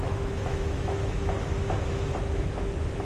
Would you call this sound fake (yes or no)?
yes